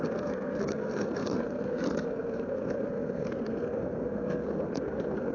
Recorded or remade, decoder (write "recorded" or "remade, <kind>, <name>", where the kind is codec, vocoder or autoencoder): remade, codec, SNAC